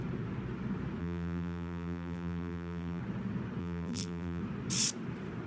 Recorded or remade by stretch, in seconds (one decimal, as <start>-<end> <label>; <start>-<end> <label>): 0.0-1.0 recorded; 1.0-3.0 remade; 3.0-3.6 recorded; 3.6-4.4 remade; 4.4-5.5 recorded